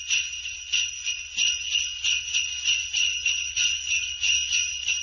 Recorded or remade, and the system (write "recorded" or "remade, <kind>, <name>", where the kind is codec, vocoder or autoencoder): recorded